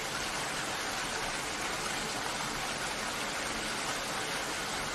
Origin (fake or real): real